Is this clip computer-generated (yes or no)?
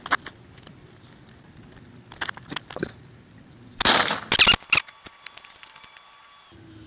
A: no